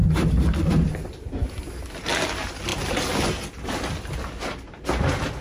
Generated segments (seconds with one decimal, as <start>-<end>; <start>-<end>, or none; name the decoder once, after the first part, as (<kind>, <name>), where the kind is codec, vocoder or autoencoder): none